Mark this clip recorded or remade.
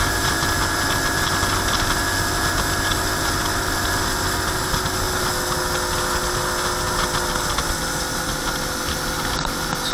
recorded